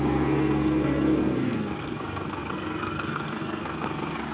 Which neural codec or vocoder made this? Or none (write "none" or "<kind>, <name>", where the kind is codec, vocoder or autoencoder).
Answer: codec, SNAC